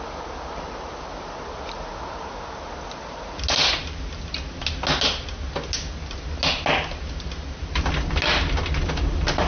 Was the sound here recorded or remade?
recorded